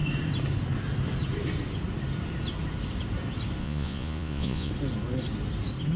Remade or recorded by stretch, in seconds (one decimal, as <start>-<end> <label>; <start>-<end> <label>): 0.0-3.6 recorded; 3.6-4.7 remade; 4.7-6.0 recorded